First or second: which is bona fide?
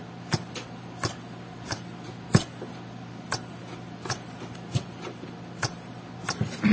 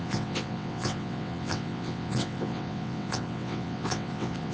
first